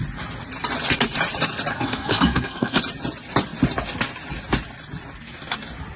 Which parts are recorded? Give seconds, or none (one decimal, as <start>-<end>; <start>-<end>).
0.0-1.7; 2.8-6.0